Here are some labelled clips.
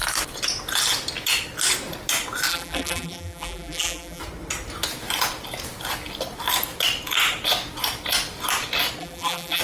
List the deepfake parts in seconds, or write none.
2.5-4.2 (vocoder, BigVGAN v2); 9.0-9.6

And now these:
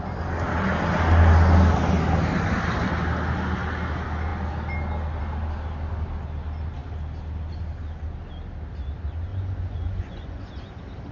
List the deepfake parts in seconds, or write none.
9.3-10.5 (vocoder, Vocos)

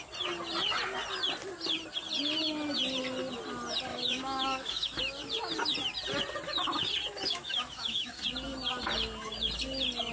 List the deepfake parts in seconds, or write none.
3.9-5.0 (autoencoder, DAC-VAE); 7.3-8.2

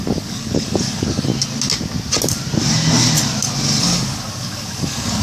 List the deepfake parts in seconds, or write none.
0.0-1.3 (codec, DAC); 3.8-5.2

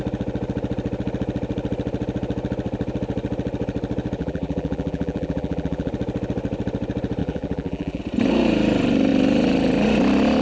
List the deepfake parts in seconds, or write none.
4.2-5.9 (vocoder, BigVGAN v2); 7.2-8.0

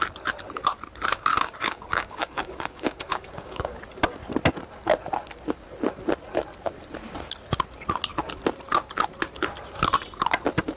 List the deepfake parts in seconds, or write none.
1.1-3.8 (codec, DAC)

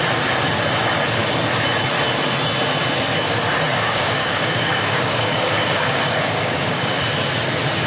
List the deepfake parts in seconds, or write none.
3.7-7.0 (codec, DAC)